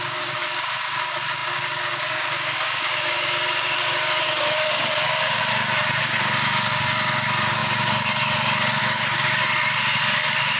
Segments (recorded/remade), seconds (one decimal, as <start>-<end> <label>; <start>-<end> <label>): 0.0-5.4 remade; 5.4-6.0 recorded; 6.0-10.6 remade